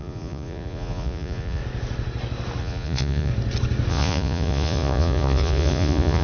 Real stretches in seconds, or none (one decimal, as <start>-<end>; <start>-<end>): 1.6-2.6; 3.3-3.9